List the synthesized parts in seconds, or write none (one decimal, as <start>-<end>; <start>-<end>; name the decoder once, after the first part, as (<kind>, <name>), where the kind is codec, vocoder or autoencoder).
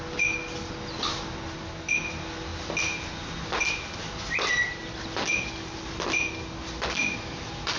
none